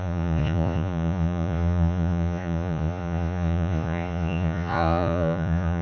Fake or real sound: fake